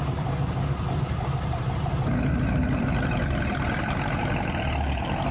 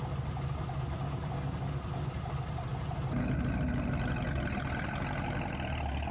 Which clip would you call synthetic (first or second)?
first